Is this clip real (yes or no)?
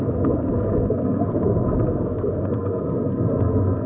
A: no